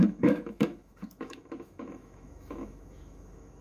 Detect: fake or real fake